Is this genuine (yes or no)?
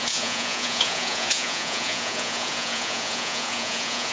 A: no